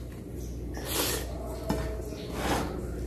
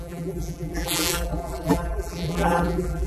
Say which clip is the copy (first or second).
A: second